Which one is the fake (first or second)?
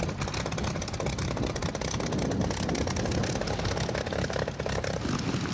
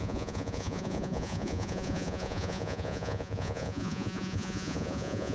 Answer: second